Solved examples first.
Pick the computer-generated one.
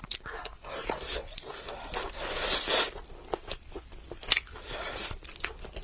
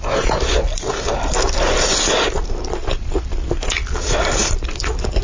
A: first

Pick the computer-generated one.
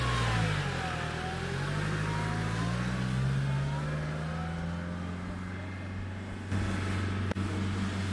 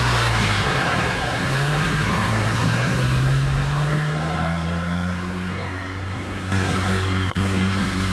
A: second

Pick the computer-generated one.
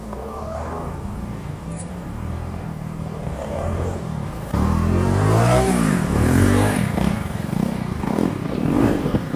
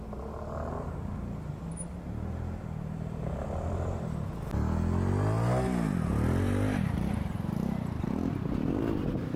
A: first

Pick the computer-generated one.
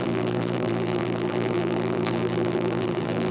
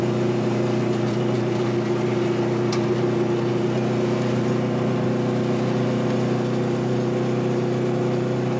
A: first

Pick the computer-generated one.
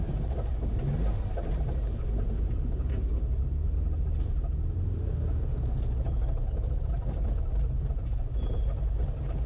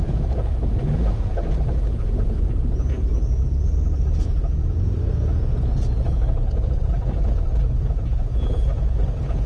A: second